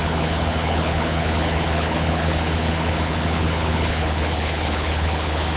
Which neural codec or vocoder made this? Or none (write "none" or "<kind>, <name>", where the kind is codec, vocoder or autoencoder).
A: codec, HILCodec